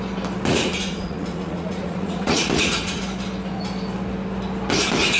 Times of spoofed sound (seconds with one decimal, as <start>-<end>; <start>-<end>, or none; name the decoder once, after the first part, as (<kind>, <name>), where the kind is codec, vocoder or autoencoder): 0.5-3.0 (vocoder, Vocos)